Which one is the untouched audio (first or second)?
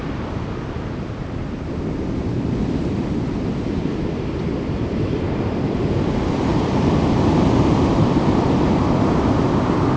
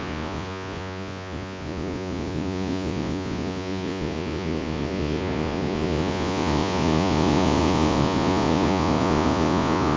first